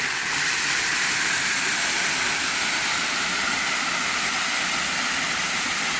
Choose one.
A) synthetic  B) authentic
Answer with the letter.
A